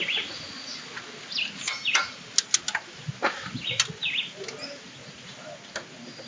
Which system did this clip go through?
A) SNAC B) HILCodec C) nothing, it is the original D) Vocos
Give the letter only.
C